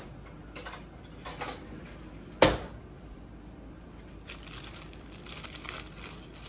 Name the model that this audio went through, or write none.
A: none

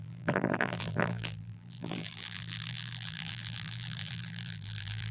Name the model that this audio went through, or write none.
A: vocoder, BigVGAN v2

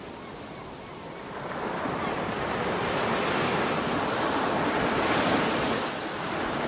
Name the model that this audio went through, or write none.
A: none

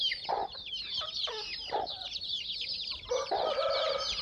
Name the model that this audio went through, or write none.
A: vocoder, BigVGAN v2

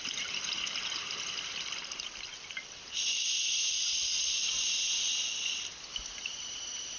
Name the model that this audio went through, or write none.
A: none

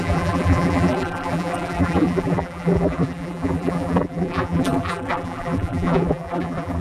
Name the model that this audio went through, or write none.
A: vocoder, BigVGAN v2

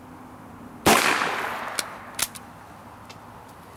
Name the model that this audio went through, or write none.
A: none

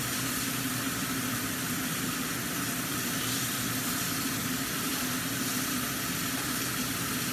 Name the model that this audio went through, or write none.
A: none